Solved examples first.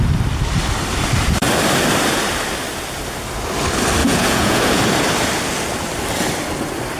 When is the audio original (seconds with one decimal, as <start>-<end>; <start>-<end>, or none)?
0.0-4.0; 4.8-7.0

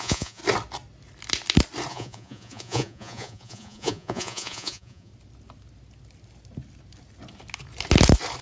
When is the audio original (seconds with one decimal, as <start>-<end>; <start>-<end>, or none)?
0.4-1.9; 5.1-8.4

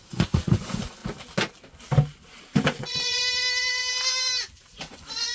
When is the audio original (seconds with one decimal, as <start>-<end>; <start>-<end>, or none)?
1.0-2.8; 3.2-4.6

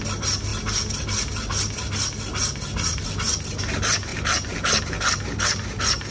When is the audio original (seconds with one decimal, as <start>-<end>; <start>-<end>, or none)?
0.0-6.1

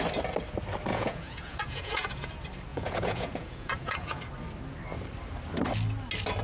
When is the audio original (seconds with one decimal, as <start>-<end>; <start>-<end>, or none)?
0.0-0.9; 2.3-2.7; 4.2-6.4